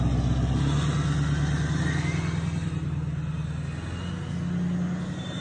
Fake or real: real